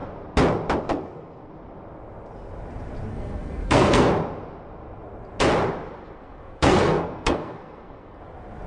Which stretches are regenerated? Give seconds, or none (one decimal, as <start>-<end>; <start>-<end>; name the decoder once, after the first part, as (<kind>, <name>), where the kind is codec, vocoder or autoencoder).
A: 0.9-1.5 (codec, SNAC); 3.1-4.1; 6.0-8.2